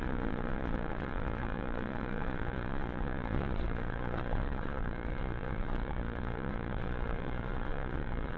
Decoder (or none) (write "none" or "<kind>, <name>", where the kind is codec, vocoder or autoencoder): vocoder, Vocos